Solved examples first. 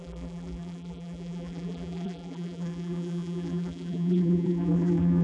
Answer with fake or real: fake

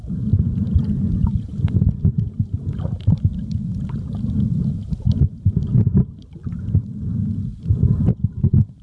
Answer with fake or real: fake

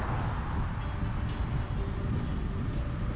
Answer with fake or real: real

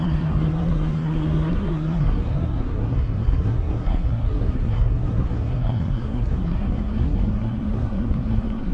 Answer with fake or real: fake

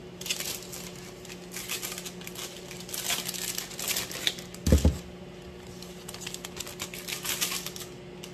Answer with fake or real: real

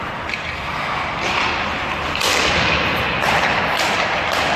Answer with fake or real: real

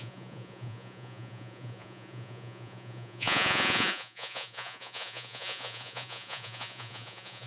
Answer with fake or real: fake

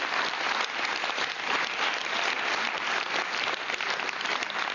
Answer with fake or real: real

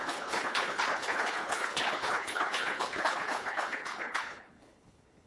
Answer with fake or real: fake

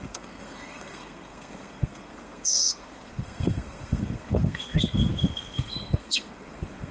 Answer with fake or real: fake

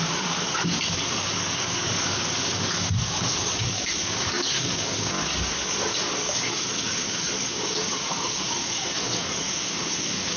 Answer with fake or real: fake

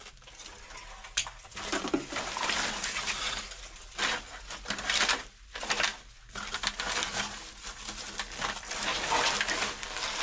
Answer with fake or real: real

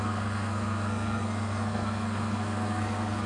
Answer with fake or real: fake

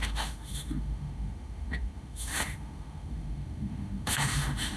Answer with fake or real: fake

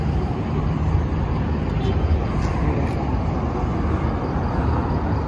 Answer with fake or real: real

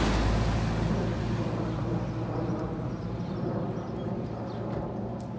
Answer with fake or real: real